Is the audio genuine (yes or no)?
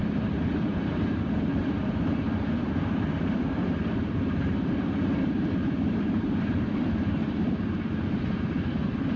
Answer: no